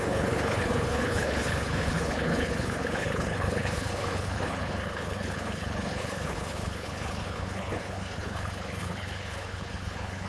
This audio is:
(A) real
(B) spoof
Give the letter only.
B